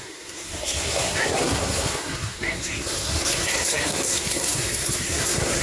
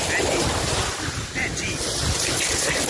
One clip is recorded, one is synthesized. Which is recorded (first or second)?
second